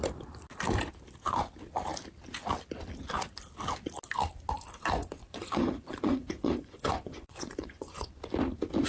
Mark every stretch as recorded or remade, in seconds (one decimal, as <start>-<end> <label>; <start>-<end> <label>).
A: 0.0-5.0 recorded; 5.0-8.2 remade; 8.2-8.9 recorded